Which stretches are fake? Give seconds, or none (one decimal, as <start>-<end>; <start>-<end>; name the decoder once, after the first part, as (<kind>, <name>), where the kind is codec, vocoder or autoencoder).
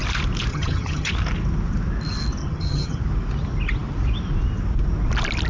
0.5-1.1 (vocoder, HiFi-GAN); 2.4-3.0